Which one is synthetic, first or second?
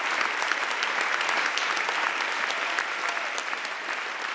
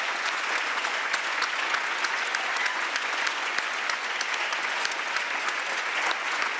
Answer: second